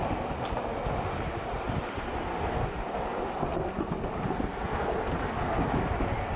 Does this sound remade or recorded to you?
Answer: recorded